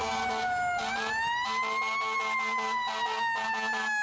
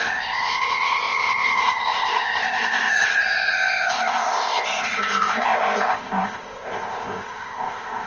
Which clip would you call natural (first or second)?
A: first